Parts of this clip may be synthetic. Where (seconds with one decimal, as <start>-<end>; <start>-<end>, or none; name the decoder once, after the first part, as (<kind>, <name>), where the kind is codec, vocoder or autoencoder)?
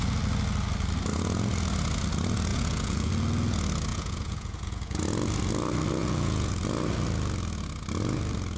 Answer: 2.5-3.1 (vocoder, Vocos); 3.9-5.0; 6.0-6.5